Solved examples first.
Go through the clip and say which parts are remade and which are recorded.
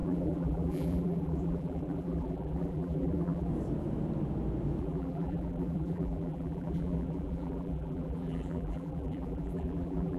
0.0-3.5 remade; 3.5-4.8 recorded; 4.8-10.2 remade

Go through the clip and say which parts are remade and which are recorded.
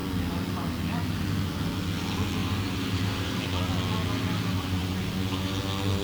0.0-2.4 recorded; 2.4-3.4 remade; 3.4-6.0 recorded